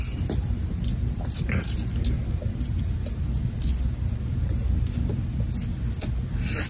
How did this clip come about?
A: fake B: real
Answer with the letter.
B